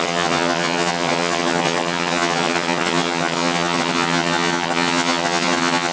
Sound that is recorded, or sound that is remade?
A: remade